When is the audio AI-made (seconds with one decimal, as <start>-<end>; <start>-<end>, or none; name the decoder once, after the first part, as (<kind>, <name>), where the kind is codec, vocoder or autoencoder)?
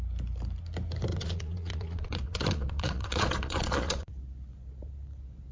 1.1-4.1 (vocoder, Vocos)